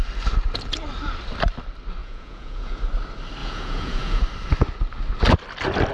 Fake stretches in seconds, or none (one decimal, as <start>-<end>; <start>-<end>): 2.0-2.8; 3.4-4.2